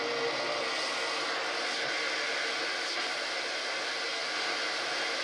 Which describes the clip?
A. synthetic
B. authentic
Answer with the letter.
B